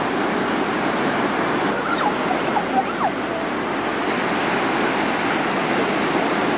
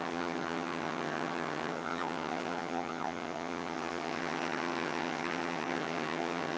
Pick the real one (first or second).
first